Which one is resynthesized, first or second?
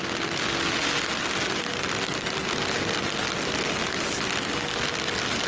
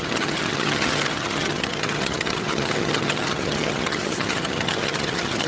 second